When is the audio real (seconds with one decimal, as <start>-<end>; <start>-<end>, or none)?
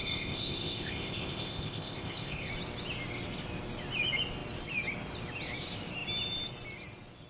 2.5-7.3